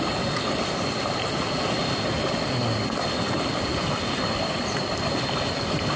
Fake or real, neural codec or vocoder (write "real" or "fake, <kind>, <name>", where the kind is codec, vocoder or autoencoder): real